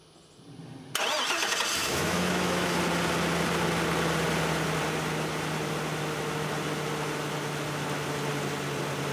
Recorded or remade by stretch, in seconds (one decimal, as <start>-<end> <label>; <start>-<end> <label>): 0.0-1.8 recorded; 1.8-2.8 remade; 2.8-9.1 recorded